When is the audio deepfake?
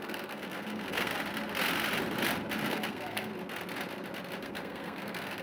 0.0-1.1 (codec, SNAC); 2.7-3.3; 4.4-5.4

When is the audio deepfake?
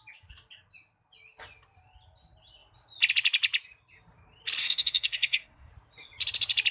4.6-5.7 (codec, SNAC)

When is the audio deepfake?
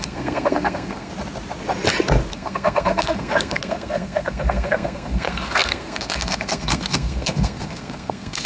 0.0-1.1 (codec, SNAC); 2.3-8.5